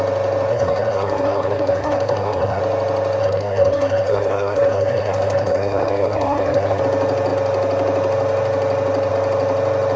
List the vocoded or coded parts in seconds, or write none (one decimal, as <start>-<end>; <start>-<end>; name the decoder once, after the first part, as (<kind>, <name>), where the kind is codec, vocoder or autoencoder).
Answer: 0.5-2.6 (codec, SNAC); 3.2-6.8